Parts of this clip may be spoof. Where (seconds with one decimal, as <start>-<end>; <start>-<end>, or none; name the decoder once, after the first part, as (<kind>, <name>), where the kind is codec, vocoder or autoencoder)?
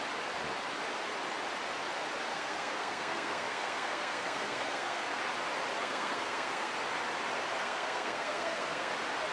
2.3-5.2 (codec, SNAC); 5.8-6.7; 7.6-8.9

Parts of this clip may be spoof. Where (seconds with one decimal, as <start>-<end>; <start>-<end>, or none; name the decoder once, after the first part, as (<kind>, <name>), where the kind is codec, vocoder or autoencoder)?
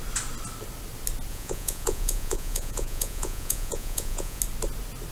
1.3-4.4 (vocoder, Vocos)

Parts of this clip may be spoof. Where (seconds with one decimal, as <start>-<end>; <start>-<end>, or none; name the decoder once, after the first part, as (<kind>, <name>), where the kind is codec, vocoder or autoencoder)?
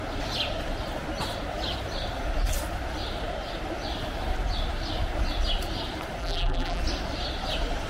6.2-6.8 (vocoder, BigVGAN v2)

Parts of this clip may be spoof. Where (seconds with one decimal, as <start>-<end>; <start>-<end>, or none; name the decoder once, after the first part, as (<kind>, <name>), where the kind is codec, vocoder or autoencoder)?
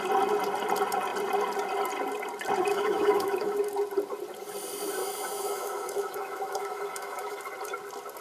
2.7-3.6 (autoencoder, DAC-VAE); 5.0-7.4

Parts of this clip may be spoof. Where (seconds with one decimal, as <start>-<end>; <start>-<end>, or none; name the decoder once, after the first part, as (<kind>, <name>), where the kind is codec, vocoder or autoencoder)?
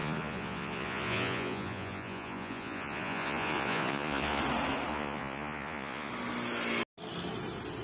0.0-4.4 (vocoder, Vocos); 4.9-6.1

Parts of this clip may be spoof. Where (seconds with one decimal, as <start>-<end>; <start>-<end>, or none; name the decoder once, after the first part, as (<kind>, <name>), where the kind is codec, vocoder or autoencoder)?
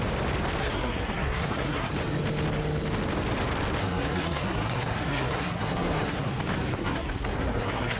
0.6-1.9 (codec, SNAC); 3.8-6.3; 6.8-8.0